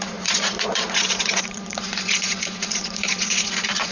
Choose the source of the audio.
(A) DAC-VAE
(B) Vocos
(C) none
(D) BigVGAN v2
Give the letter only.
B